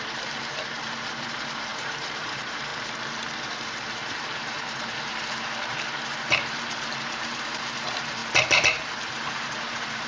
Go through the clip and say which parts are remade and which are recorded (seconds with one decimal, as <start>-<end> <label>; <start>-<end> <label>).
0.0-2.7 remade; 2.7-3.4 recorded; 3.4-8.2 remade; 8.2-9.0 recorded; 9.0-10.1 remade